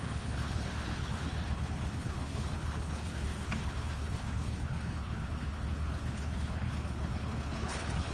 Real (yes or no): no